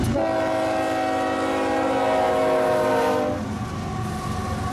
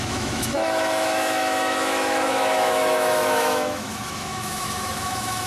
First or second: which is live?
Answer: first